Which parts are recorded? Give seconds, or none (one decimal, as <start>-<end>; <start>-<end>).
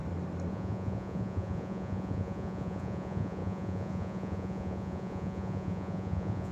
0.0-0.5